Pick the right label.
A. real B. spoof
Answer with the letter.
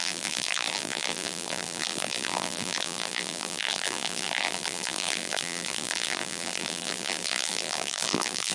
B